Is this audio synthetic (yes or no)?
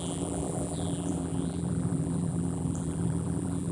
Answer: yes